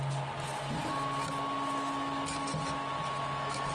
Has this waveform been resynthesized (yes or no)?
no